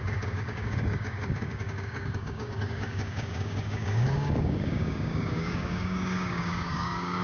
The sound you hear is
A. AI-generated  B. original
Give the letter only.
A